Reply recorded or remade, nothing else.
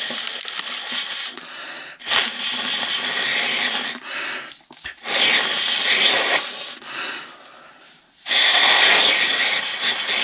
recorded